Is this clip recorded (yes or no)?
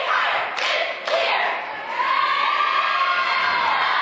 yes